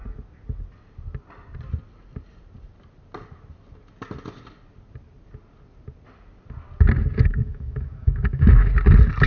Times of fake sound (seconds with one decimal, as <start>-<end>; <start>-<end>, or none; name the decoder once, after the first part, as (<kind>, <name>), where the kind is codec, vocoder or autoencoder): 7.3-8.7 (autoencoder, DAC-VAE)